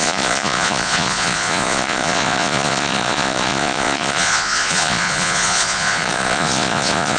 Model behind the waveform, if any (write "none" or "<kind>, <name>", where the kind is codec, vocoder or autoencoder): vocoder, Vocos